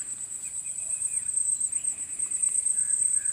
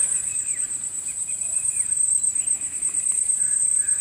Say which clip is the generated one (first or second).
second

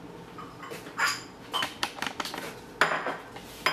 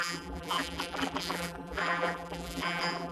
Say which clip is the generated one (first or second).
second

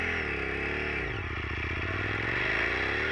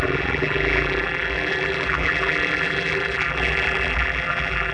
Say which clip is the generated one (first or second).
second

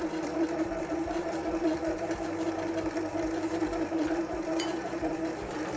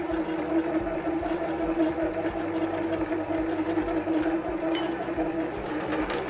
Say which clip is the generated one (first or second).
first